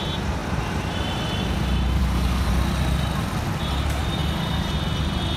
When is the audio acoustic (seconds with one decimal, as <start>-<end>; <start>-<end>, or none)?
0.0-2.0; 2.5-5.4